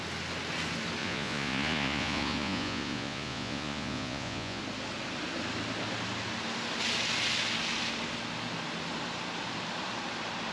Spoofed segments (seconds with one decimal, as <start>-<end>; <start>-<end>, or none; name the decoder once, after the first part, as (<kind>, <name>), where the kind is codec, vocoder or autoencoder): 1.0-4.6 (vocoder, Vocos)